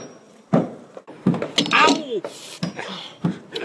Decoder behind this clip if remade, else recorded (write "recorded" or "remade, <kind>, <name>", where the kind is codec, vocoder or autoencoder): recorded